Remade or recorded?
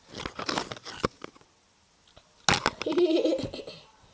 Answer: recorded